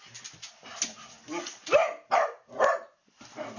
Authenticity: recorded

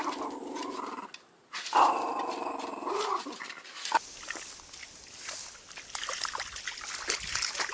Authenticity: recorded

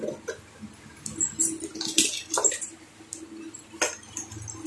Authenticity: recorded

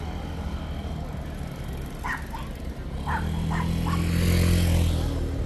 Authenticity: recorded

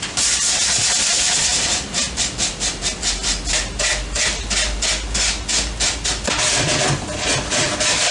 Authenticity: recorded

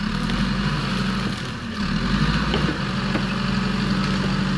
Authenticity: recorded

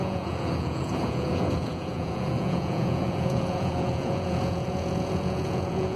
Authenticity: remade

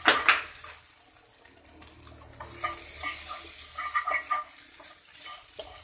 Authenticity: recorded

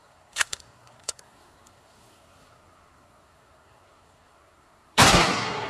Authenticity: remade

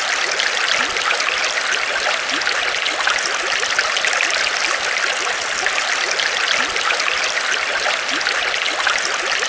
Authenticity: recorded